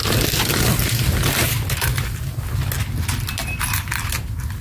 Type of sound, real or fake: real